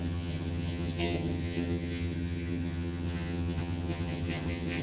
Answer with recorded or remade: remade